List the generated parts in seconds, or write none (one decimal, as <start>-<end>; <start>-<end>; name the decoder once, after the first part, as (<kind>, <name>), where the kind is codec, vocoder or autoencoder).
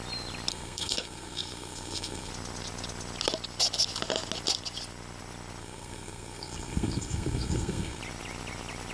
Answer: 0.5-2.3 (codec, SNAC); 5.6-8.0